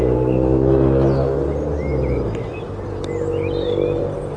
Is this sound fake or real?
real